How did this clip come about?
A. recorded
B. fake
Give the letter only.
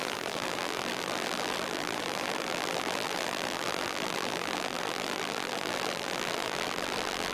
B